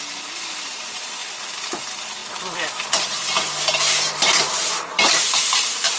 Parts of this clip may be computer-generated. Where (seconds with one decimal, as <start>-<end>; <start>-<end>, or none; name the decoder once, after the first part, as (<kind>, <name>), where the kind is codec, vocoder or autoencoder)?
0.0-1.2 (vocoder, BigVGAN v2); 1.8-2.2; 5.1-6.0